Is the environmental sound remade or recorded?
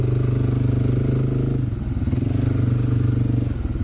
recorded